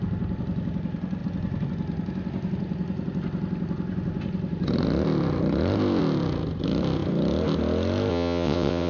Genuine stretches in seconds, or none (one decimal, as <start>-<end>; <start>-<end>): 0.0-8.1